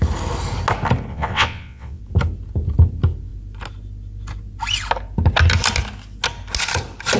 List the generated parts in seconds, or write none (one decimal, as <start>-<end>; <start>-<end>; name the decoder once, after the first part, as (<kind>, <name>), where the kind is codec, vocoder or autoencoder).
1.1-2.0 (vocoder, WaveNeXt)